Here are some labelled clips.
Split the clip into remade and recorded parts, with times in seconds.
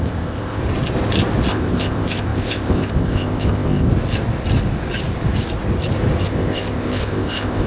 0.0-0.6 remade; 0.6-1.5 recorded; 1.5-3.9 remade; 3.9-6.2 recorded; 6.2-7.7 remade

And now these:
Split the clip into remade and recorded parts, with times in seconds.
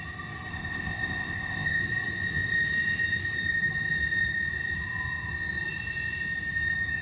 0.0-0.5 recorded; 0.5-1.8 remade; 1.8-7.0 recorded